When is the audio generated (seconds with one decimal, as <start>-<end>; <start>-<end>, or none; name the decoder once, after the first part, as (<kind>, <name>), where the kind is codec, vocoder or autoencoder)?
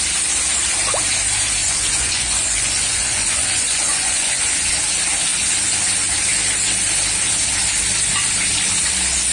1.6-4.4 (vocoder, Vocos)